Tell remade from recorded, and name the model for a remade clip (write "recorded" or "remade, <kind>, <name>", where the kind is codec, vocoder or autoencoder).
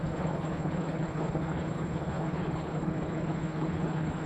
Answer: remade, codec, HILCodec